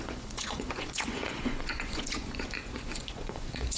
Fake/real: fake